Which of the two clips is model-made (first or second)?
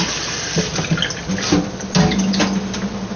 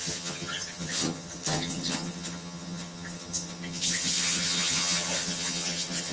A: second